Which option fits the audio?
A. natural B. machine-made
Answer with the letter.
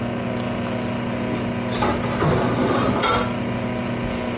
A